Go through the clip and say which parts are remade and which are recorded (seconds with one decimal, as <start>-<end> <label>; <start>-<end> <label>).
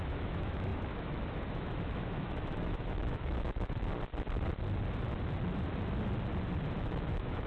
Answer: 0.0-3.9 remade; 3.9-6.8 recorded; 6.8-7.5 remade